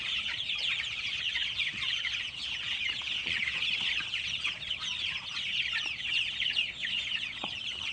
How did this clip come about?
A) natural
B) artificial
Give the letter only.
B